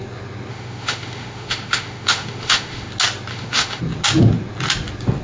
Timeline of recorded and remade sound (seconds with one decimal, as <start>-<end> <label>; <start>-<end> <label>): 0.0-0.5 recorded; 0.5-2.9 remade; 2.9-3.3 recorded; 3.3-3.8 remade; 3.8-5.2 recorded

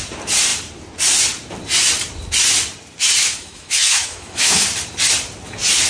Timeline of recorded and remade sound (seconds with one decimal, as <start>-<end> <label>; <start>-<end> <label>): 0.0-3.2 recorded; 3.2-4.7 remade; 4.7-5.9 recorded

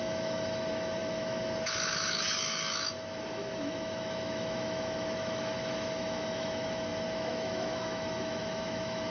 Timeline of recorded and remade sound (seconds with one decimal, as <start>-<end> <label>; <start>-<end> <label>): 0.0-9.1 remade

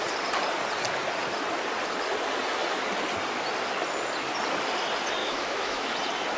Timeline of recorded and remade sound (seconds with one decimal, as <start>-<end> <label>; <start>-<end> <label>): 0.0-5.2 recorded; 5.2-5.9 remade; 5.9-6.4 recorded

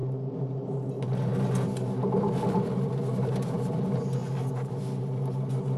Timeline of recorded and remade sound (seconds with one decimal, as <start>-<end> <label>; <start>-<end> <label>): 0.0-5.8 recorded

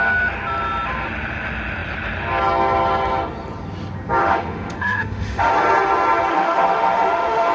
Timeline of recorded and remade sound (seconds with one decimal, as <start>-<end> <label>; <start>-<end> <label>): 0.0-4.2 recorded; 4.2-5.5 remade; 5.5-6.3 recorded; 6.3-7.5 remade

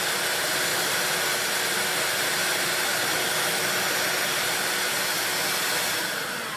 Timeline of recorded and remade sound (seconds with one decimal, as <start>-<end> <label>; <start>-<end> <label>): 0.0-6.6 recorded

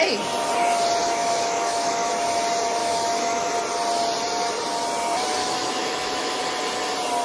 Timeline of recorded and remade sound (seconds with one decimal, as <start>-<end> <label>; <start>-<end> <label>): 0.0-1.0 recorded; 1.0-2.1 remade; 2.1-2.8 recorded; 2.8-3.5 remade; 3.5-5.4 recorded; 5.4-6.4 remade; 6.4-7.2 recorded